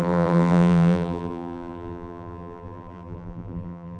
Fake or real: fake